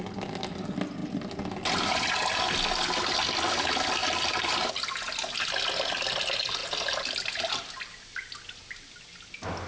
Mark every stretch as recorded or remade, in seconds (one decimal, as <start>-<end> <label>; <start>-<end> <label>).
0.0-4.0 recorded; 4.0-4.8 remade; 4.8-9.7 recorded